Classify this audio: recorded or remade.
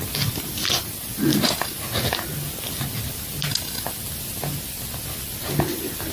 recorded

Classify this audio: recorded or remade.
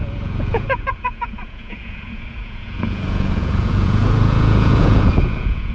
remade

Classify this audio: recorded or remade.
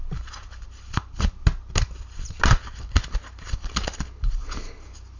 recorded